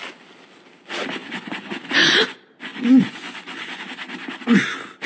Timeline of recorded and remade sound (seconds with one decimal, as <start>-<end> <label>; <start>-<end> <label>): 0.0-1.2 recorded; 1.2-1.9 remade; 1.9-2.7 recorded; 2.7-3.8 remade; 3.8-5.1 recorded